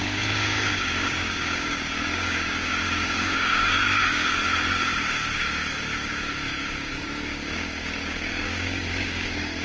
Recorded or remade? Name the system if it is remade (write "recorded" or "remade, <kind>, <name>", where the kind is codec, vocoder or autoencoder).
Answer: remade, codec, DAC